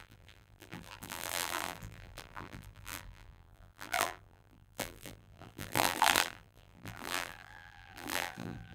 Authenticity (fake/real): fake